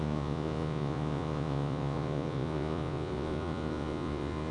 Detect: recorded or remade remade